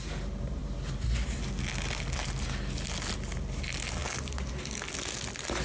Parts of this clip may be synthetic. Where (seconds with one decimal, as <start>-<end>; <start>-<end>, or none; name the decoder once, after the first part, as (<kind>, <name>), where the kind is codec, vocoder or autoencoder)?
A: none